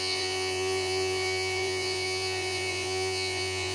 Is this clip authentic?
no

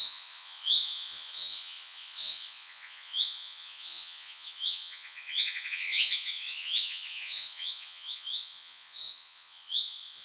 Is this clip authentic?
no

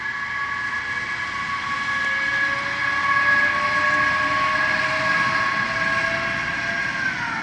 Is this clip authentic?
yes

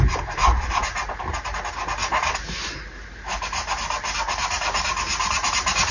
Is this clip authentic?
yes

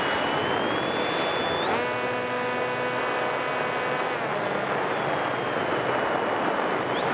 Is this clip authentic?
yes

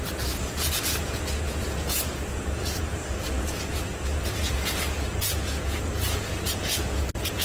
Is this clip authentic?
no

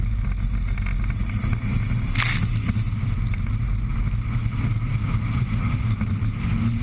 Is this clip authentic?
yes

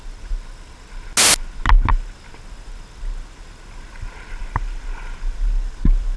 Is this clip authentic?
yes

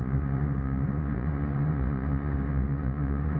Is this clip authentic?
no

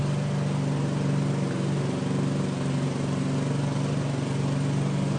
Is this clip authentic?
yes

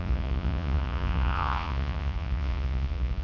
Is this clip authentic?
no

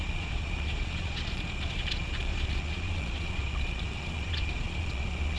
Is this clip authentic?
no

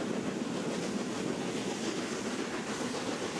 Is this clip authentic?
yes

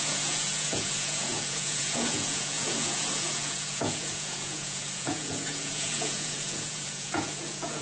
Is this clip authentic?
no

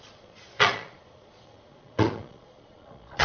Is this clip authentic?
no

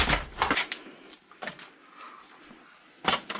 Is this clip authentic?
yes